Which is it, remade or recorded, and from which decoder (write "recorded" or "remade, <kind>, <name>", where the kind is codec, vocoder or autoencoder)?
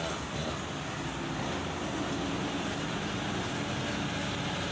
recorded